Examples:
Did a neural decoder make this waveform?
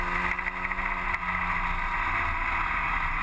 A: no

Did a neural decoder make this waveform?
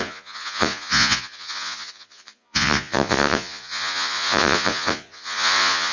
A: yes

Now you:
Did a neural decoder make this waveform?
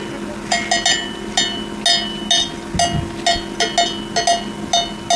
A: no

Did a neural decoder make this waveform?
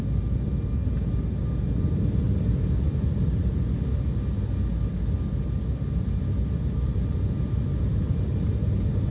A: no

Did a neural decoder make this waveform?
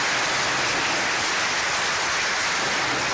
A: no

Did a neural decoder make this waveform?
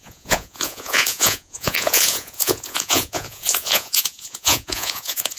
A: yes